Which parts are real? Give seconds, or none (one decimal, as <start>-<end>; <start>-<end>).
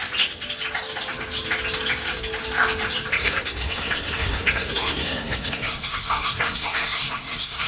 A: 0.0-3.1